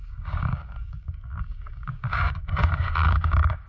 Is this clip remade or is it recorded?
remade